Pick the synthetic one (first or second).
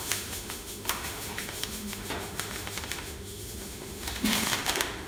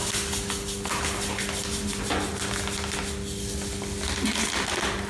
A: first